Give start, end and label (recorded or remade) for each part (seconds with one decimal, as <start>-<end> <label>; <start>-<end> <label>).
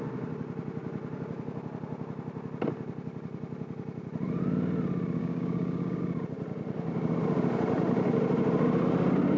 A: 0.0-5.2 recorded; 5.2-6.0 remade; 6.0-9.4 recorded